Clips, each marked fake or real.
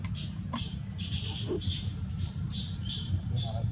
fake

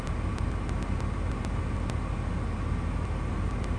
real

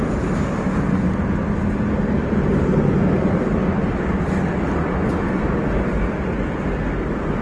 real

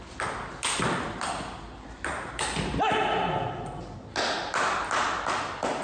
real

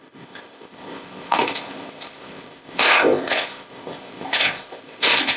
fake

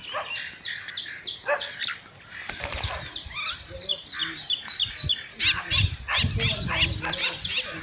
real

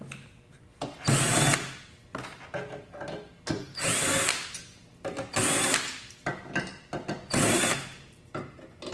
real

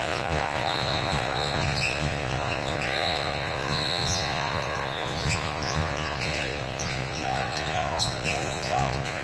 fake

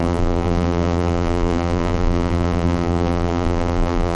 fake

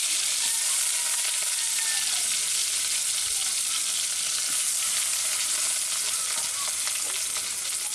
real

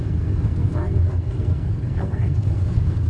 fake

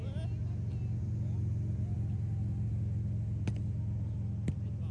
real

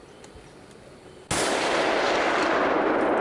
real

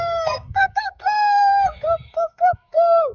fake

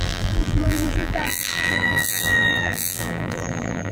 fake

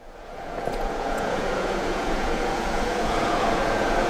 fake